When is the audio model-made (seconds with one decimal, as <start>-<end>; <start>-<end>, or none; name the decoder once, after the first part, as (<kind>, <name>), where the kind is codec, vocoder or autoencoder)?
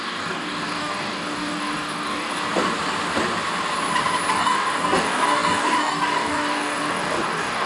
0.0-2.4 (codec, DAC); 4.3-7.7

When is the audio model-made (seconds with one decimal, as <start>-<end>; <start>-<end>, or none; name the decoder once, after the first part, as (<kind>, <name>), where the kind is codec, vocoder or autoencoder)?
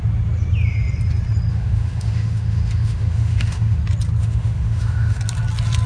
1.5-3.8 (autoencoder, DAC-VAE); 4.2-5.2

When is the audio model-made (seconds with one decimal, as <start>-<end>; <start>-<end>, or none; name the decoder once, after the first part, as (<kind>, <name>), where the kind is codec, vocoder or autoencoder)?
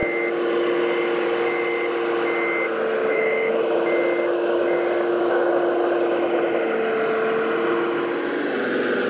3.0-3.6 (codec, DAC); 4.3-5.5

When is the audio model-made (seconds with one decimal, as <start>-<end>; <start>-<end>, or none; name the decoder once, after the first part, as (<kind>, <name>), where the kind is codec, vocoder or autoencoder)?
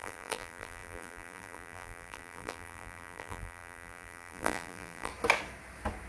0.0-5.1 (vocoder, BigVGAN v2)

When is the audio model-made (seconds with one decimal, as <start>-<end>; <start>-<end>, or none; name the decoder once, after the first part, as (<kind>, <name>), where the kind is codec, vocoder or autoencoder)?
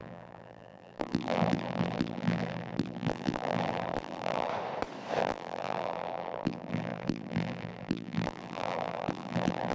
0.0-4.5 (vocoder, BigVGAN v2); 5.2-9.7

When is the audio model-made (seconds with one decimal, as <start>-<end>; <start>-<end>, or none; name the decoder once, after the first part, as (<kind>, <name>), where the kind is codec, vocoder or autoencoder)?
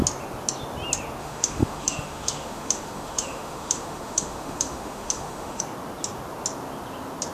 1.2-5.6 (autoencoder, DAC-VAE)